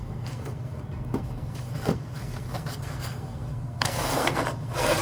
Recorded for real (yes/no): no